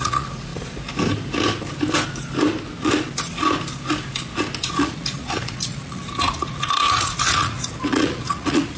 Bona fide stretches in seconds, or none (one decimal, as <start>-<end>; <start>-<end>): 0.5-4.7